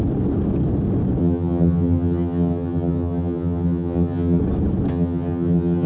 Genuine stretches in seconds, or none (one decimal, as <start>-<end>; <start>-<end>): 0.0-1.2; 4.4-4.9